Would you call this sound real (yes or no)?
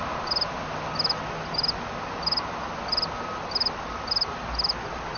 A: yes